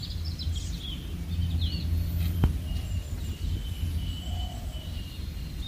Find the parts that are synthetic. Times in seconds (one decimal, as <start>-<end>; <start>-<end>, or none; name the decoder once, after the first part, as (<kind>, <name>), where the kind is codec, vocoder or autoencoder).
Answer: none